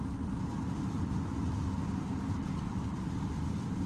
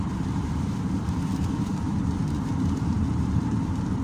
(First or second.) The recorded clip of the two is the first